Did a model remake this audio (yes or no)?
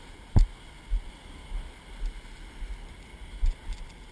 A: no